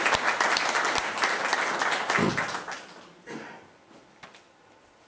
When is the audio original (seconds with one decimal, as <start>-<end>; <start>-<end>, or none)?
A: 0.0-5.1